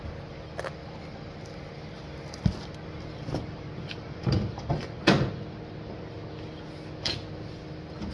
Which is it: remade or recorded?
recorded